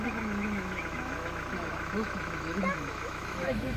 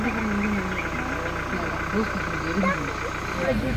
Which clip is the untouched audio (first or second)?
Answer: second